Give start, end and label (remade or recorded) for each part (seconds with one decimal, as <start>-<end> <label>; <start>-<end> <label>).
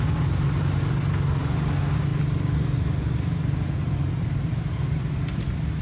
0.0-5.8 recorded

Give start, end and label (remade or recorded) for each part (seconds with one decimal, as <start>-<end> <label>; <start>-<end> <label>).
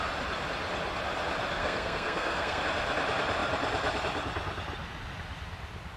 0.0-1.6 recorded; 1.6-2.6 remade; 2.6-6.0 recorded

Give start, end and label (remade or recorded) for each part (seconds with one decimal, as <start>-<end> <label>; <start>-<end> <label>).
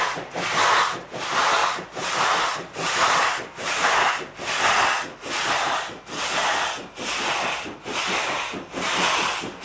0.0-1.6 recorded; 1.6-4.1 remade; 4.1-9.6 recorded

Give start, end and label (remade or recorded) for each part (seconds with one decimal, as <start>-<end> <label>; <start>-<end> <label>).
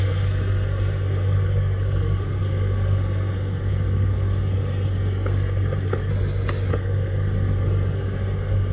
0.0-6.1 remade; 6.1-6.7 recorded; 6.7-8.7 remade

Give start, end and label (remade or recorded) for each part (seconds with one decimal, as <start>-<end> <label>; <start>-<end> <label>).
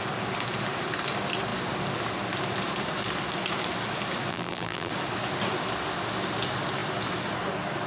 0.0-4.3 recorded; 4.3-4.9 remade; 4.9-7.9 recorded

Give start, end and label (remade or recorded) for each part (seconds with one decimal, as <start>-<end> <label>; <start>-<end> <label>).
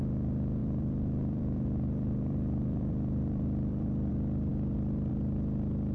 0.0-0.6 recorded; 0.6-4.1 remade; 4.1-5.9 recorded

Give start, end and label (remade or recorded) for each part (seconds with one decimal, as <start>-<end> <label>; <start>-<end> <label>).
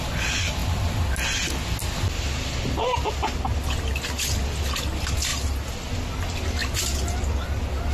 0.0-7.9 recorded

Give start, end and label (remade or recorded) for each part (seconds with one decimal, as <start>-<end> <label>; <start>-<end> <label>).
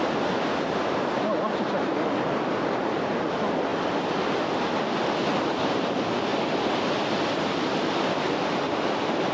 0.0-9.3 recorded